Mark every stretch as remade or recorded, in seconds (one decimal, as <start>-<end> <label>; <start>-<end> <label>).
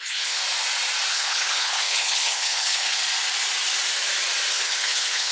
0.0-0.4 remade; 0.4-1.1 recorded; 1.1-3.0 remade; 3.0-4.5 recorded; 4.5-5.3 remade